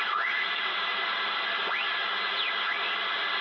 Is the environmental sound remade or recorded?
recorded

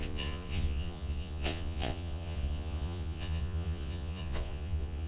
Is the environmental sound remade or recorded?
remade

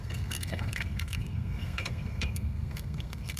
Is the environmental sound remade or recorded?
remade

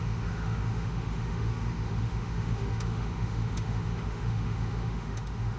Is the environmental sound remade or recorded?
remade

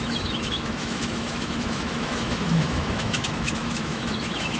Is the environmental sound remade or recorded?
remade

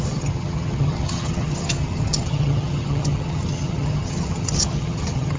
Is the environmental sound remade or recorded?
remade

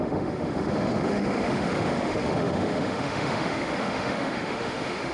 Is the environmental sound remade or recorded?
remade